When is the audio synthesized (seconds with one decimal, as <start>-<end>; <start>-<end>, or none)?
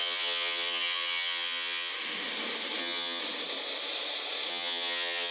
0.0-1.9; 2.8-3.2; 4.5-5.3